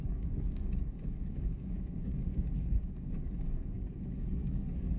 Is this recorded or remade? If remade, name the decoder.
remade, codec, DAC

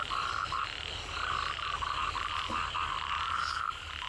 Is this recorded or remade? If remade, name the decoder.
recorded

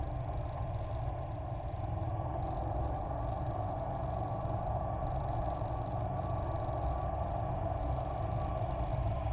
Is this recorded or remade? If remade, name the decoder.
recorded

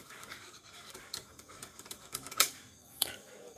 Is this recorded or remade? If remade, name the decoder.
remade, codec, DAC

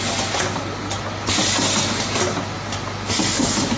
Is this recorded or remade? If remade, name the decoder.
recorded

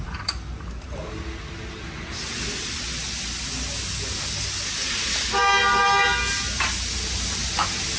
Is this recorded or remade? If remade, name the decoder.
recorded